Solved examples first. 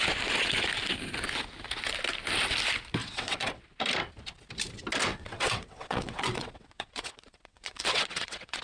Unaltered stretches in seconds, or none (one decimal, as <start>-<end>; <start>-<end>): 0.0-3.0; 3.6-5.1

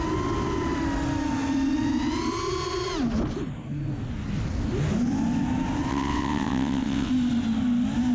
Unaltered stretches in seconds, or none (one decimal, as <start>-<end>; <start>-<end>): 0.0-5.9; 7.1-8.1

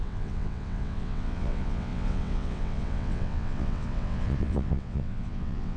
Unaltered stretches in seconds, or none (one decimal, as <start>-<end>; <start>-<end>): none

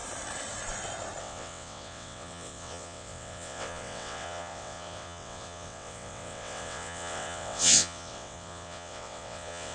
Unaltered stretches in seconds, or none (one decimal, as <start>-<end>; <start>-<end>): 0.0-1.2

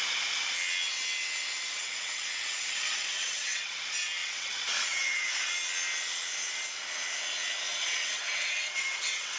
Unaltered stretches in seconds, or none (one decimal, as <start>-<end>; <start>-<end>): 0.0-1.7; 3.8-4.2; 5.3-7.7

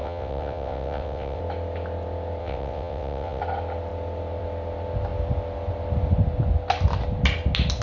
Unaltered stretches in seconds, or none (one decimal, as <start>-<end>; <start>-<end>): 1.4-2.4; 3.4-7.8